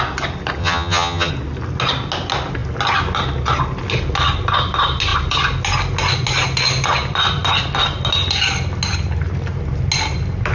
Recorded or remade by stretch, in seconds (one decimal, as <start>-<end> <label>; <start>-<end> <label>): 0.0-0.6 recorded; 0.6-1.3 remade; 1.3-10.5 recorded